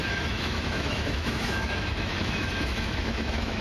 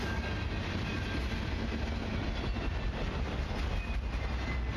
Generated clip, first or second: first